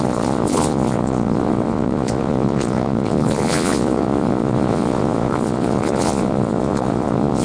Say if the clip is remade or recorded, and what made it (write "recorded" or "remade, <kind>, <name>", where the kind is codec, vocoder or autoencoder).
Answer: remade, vocoder, Vocos